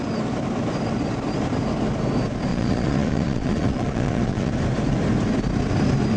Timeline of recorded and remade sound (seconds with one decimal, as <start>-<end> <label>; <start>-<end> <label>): 0.0-2.5 recorded; 2.5-4.5 remade; 4.5-6.2 recorded